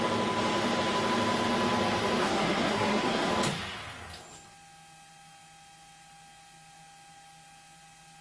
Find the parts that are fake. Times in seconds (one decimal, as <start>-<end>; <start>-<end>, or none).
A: 2.2-3.3